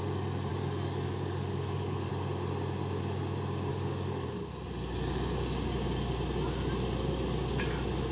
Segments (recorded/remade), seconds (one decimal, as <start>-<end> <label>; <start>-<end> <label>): 0.0-0.5 recorded; 0.5-2.1 remade; 2.1-3.7 recorded; 3.7-4.5 remade; 4.5-8.1 recorded